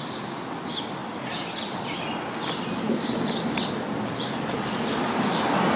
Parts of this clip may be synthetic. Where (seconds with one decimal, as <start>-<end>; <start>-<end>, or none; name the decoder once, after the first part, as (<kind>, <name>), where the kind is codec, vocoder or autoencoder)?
none